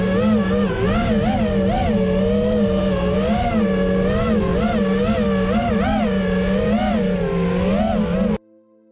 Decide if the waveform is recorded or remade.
recorded